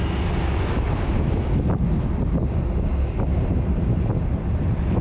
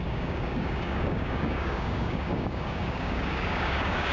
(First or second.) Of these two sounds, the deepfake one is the second